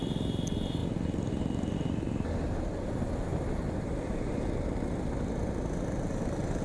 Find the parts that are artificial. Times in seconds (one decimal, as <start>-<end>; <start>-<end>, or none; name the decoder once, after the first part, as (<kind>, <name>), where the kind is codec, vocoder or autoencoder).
none